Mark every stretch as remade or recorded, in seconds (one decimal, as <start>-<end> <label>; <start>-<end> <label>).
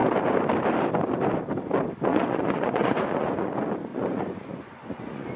0.0-2.1 recorded; 2.1-3.5 remade; 3.5-3.9 recorded; 3.9-5.4 remade